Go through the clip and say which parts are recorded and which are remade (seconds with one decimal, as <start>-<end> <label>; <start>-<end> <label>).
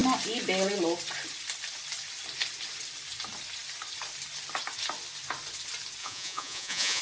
0.0-6.0 recorded; 6.0-7.0 remade